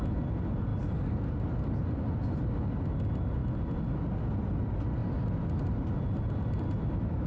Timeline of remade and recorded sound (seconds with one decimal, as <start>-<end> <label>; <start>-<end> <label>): 0.0-7.3 recorded